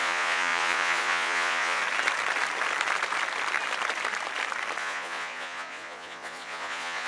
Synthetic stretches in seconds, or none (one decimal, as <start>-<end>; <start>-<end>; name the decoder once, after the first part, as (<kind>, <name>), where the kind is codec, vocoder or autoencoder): 0.0-1.8 (vocoder, Vocos); 4.8-7.1